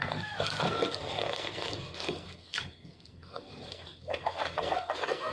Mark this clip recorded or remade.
remade